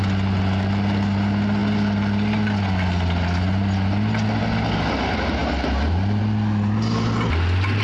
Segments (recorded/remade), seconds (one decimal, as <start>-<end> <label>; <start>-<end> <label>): 0.0-7.8 recorded